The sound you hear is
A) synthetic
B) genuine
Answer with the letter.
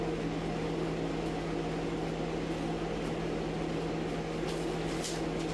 B